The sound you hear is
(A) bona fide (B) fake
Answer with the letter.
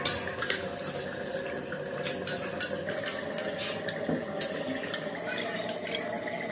A